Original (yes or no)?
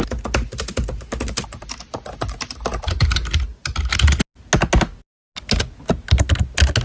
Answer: yes